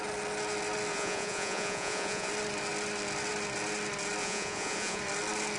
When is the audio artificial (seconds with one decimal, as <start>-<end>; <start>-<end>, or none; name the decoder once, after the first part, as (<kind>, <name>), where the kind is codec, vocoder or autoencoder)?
0.9-2.3 (vocoder, Vocos); 4.2-5.0